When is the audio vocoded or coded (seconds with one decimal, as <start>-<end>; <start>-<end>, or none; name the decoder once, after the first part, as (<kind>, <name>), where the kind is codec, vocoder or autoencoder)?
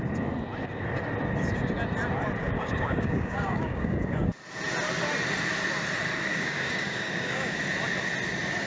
2.4-4.3 (codec, DAC); 6.3-7.6